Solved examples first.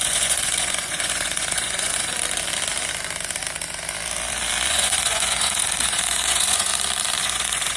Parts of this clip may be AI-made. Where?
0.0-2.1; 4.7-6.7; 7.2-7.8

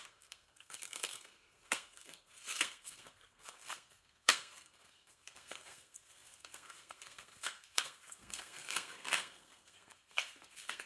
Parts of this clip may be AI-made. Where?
0.0-10.9